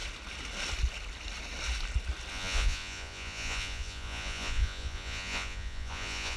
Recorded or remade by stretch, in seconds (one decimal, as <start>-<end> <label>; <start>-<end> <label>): 0.0-2.3 recorded; 2.3-6.4 remade